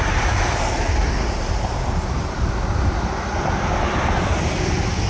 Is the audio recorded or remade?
recorded